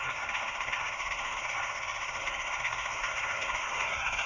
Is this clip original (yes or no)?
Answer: no